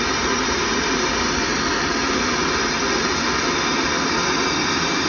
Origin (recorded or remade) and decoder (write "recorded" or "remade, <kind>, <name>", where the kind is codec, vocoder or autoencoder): recorded